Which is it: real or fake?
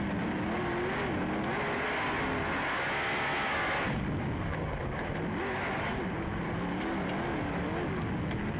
real